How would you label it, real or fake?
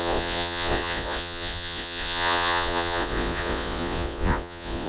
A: fake